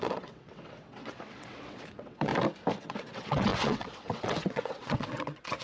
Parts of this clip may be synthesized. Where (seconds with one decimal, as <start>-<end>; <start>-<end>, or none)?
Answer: 0.0-2.3; 2.8-5.6